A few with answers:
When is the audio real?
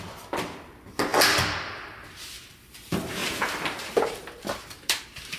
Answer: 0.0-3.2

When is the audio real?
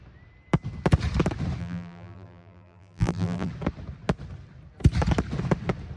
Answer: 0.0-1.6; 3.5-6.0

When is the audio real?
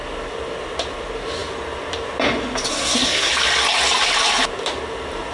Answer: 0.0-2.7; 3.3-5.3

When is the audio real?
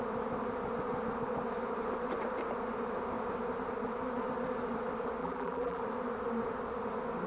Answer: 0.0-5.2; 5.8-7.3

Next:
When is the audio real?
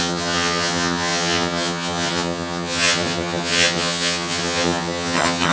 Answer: none